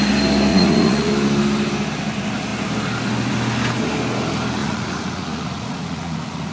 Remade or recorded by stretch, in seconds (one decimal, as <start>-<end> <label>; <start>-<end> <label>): 0.0-0.5 recorded; 0.5-1.1 remade; 1.1-4.6 recorded; 4.6-6.5 remade

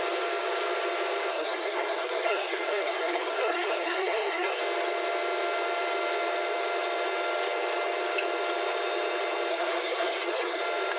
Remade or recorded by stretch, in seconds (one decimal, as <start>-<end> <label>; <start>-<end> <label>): 0.0-1.3 recorded; 1.3-4.6 remade; 4.6-9.5 recorded; 9.5-10.6 remade; 10.6-11.0 recorded

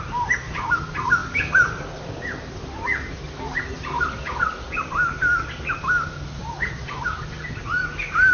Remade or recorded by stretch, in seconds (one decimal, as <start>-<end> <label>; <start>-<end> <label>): 0.0-8.3 recorded